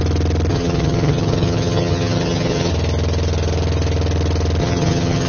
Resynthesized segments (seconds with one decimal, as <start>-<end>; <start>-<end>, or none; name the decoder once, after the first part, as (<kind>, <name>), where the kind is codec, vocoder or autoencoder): 0.5-2.7 (vocoder, HiFi-GAN); 4.6-5.3